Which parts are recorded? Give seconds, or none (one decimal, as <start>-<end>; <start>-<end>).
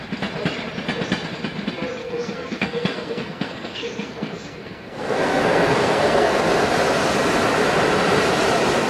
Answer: 0.0-2.0; 6.4-8.9